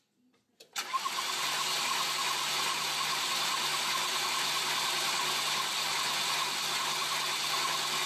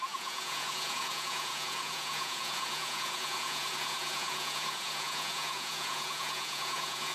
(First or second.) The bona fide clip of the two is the first